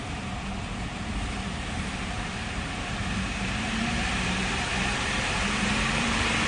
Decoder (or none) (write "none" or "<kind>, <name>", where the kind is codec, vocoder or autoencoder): vocoder, BigVGAN v2